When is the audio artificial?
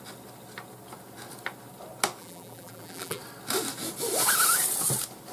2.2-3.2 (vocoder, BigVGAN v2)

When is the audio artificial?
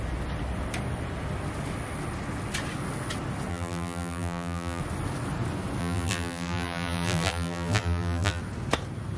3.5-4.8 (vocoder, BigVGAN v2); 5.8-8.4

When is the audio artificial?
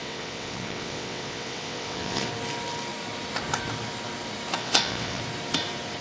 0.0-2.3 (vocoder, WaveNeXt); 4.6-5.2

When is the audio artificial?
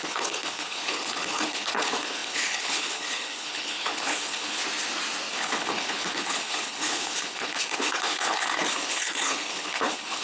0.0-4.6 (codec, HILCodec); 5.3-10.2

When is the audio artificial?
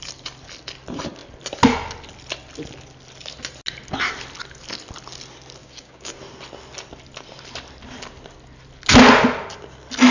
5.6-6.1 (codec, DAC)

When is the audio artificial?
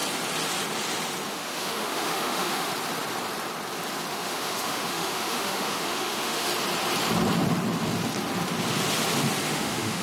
1.3-2.7 (autoencoder, DAC-VAE); 4.1-6.5; 9.5-10.0